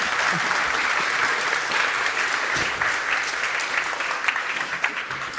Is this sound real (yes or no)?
yes